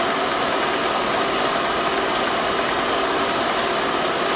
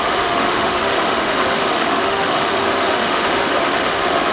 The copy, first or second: second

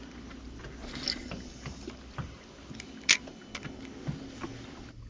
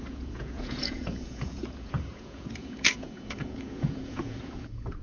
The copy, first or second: second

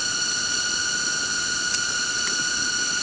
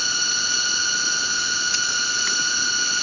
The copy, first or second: first